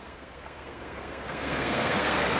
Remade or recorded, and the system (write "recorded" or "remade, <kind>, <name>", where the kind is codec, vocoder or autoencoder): remade, codec, SNAC